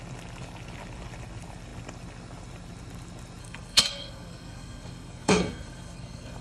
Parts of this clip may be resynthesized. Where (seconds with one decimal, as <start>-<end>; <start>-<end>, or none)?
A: 3.4-6.4